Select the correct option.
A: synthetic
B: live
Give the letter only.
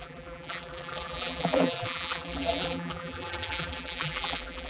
A